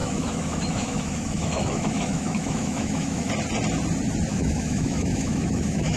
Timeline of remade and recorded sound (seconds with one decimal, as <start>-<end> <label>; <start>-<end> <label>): 0.0-3.3 remade; 3.3-4.3 recorded; 4.3-6.0 remade